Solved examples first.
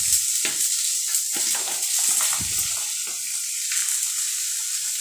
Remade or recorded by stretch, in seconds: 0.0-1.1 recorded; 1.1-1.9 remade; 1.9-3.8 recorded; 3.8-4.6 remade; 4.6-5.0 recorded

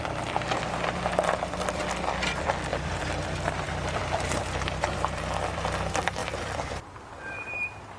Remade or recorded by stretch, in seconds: 0.0-2.7 recorded; 2.7-5.2 remade; 5.2-6.2 recorded; 6.2-8.0 remade

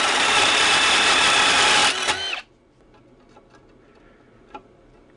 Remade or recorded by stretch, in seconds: 0.0-1.8 remade; 1.8-4.2 recorded; 4.2-5.2 remade